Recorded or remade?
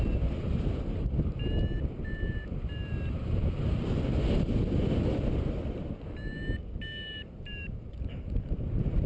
recorded